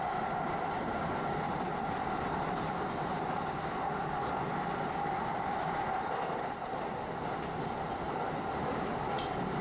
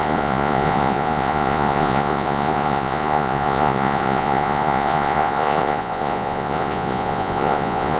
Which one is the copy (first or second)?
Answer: second